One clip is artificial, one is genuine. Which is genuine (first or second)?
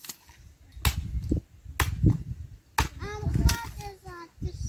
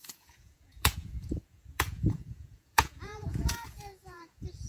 first